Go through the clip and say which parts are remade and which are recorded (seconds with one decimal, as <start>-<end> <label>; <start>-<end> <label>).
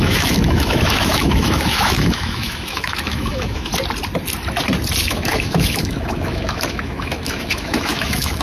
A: 0.0-3.7 remade; 3.7-5.0 recorded; 5.0-8.4 remade